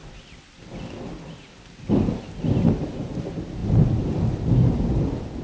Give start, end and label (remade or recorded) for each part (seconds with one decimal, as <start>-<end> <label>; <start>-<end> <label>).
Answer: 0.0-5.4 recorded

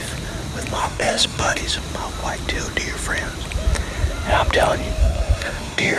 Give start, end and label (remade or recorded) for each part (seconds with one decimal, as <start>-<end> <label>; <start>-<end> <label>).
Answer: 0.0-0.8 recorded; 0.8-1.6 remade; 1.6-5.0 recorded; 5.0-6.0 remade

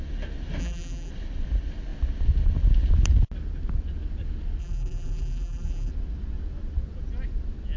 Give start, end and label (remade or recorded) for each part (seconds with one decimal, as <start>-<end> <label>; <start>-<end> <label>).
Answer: 0.0-0.6 recorded; 0.6-1.1 remade; 1.1-4.6 recorded; 4.6-5.9 remade; 5.9-7.8 recorded